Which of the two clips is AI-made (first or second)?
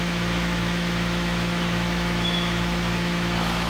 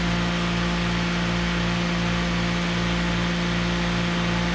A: first